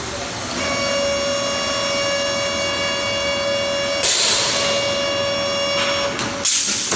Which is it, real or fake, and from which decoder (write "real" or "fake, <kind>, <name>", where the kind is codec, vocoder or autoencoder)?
real